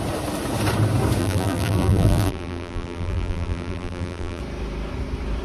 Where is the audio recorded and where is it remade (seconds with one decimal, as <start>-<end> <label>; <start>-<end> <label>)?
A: 0.0-1.2 recorded; 1.2-4.4 remade; 4.4-5.4 recorded